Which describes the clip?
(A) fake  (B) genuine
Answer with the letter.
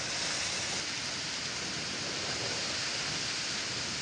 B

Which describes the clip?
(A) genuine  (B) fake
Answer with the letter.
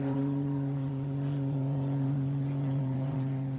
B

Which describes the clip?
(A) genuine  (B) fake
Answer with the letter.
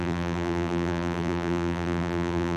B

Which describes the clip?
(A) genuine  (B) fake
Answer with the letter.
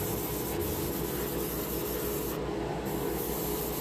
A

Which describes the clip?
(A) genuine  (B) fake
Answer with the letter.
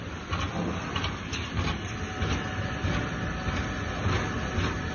A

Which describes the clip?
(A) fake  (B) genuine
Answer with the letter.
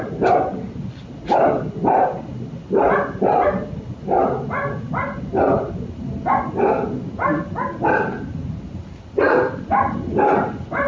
B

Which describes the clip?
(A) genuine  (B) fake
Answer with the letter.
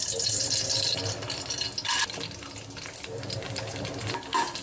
A